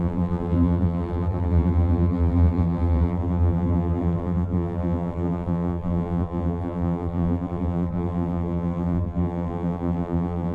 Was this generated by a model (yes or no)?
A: yes